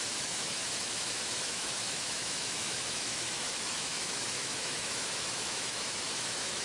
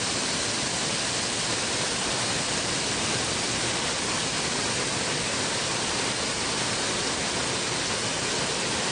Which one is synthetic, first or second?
first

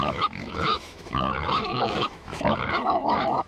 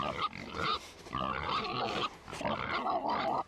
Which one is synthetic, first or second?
first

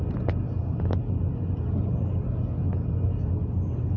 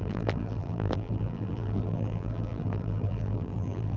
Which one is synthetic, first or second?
second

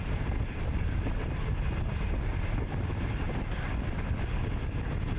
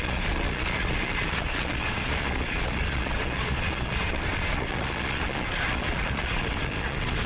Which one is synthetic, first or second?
second